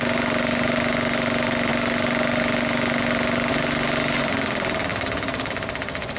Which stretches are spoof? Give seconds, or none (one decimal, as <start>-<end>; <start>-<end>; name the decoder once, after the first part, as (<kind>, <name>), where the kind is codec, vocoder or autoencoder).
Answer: none

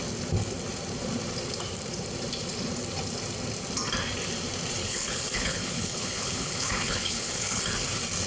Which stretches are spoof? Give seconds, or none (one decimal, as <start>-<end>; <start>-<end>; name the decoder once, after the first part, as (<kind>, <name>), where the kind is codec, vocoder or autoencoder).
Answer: 4.8-7.6 (codec, HILCodec)

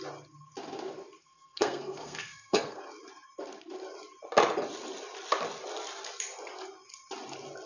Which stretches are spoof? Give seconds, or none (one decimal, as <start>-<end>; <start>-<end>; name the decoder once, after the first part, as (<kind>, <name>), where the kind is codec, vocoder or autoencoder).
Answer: 1.2-2.8 (codec, SNAC)

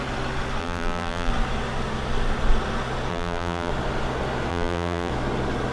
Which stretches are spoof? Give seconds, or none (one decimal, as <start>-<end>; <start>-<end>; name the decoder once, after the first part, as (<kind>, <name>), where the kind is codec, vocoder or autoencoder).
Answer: 0.6-1.3 (vocoder, BigVGAN v2); 3.1-3.7; 4.5-5.1

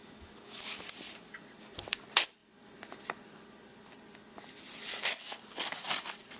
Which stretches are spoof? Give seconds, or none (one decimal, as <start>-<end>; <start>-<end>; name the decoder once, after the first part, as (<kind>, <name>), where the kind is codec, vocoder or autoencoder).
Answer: 0.0-0.6 (autoencoder, DAC-VAE)

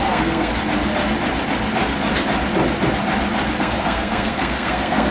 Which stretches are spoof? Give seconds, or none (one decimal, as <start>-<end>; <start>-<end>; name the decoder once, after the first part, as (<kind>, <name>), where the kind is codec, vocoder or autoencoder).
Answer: 0.0-0.5 (codec, SNAC); 3.6-5.1

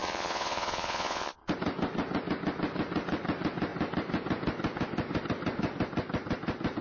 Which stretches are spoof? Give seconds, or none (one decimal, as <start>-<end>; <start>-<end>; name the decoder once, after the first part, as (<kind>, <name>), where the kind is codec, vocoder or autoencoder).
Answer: 0.0-1.4 (vocoder, Vocos)

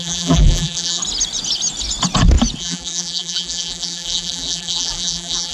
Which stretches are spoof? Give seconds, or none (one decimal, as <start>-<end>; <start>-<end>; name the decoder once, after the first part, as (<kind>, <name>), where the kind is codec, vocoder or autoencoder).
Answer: 0.0-1.0 (vocoder, BigVGAN v2); 2.6-5.5